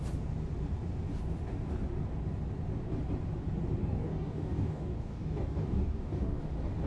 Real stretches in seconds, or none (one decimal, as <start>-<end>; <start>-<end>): 0.0-3.8; 6.4-6.9